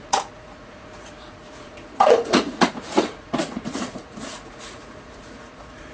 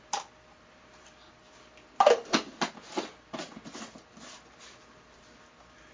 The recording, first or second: second